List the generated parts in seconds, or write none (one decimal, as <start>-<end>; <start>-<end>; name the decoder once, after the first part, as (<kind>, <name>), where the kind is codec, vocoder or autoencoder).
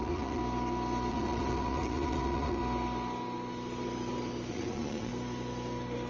0.0-0.4 (vocoder, Vocos); 1.1-2.6; 4.5-5.1